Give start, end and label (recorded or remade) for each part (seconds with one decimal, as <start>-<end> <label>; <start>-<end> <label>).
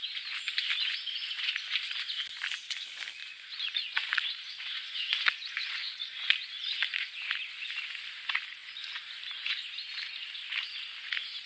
0.0-3.2 recorded; 3.2-7.2 remade; 7.2-11.5 recorded